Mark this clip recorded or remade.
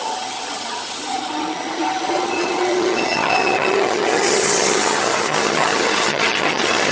remade